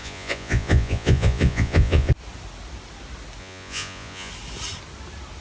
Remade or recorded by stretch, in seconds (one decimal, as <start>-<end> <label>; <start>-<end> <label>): 0.0-2.1 remade; 2.1-3.4 recorded; 3.4-4.3 remade; 4.3-5.4 recorded